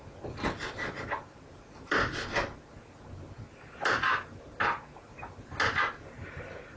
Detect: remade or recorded recorded